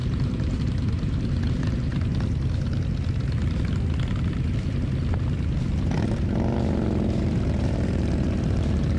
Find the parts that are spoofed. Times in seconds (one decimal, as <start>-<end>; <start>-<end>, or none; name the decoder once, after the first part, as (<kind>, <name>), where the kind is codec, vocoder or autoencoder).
0.0-1.9 (vocoder, BigVGAN v2); 7.2-9.0